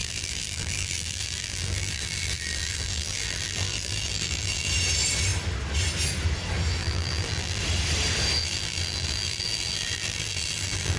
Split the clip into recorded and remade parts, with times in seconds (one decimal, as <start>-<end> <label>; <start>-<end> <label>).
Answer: 0.0-4.7 remade; 4.7-6.8 recorded; 6.8-7.6 remade; 7.6-8.4 recorded; 8.4-11.0 remade